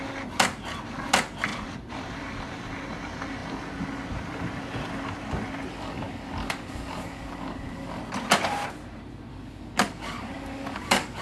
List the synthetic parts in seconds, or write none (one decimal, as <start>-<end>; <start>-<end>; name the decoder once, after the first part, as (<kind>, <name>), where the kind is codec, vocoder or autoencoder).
5.7-8.0 (codec, DAC); 9.3-11.2